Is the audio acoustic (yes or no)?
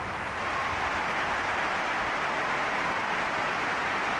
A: no